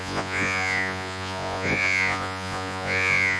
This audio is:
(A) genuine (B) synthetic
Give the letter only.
B